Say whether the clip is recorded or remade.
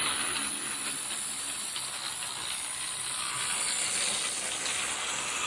recorded